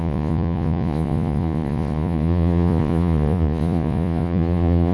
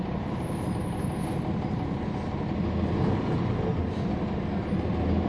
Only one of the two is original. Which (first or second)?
second